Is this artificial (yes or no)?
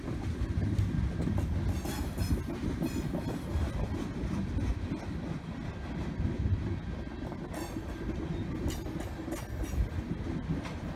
no